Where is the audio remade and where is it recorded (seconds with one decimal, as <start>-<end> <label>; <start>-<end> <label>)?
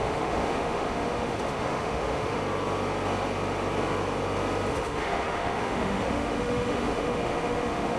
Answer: 0.0-2.4 remade; 2.4-4.7 recorded; 4.7-8.0 remade